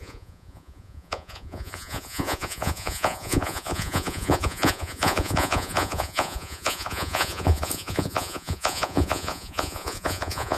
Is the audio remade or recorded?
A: remade